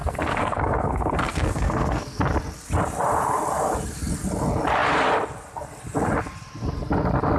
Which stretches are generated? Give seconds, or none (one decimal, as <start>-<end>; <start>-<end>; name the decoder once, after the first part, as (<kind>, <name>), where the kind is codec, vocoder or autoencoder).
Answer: 0.0-2.2 (codec, SNAC)